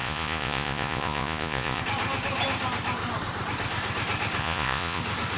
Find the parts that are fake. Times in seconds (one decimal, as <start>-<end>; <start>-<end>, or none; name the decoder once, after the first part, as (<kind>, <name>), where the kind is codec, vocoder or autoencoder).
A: 0.0-1.8 (vocoder, Vocos); 4.4-5.0